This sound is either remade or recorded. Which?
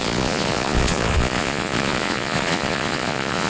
remade